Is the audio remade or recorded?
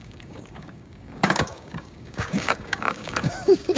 remade